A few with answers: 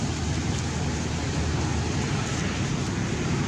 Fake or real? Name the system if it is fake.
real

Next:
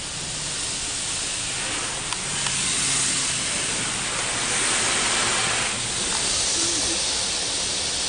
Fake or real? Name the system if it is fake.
real